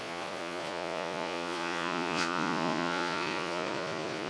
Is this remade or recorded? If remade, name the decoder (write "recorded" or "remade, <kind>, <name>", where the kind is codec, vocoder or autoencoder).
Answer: remade, vocoder, Vocos